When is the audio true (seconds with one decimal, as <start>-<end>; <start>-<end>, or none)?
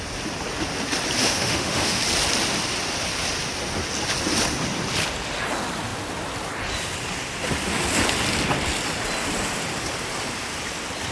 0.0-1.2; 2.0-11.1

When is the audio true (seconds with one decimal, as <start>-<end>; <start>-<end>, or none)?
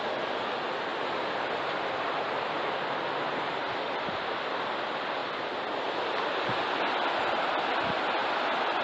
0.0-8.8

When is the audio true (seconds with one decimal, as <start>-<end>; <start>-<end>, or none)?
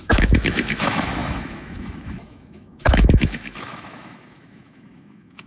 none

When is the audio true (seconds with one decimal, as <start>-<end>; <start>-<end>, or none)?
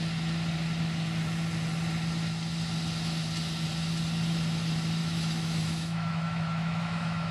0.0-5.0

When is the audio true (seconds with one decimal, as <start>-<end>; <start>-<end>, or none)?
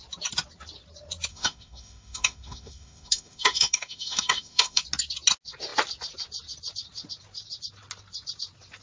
0.0-1.3; 4.8-8.8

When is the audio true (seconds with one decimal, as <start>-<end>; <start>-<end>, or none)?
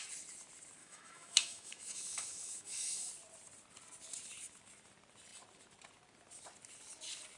0.0-0.8; 3.1-7.4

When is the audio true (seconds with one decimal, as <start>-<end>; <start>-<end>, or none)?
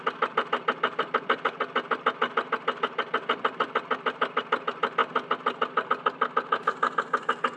0.0-7.6